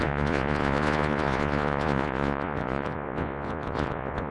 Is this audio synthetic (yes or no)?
yes